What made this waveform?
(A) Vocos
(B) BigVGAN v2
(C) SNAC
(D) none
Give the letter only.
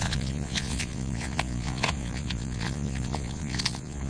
A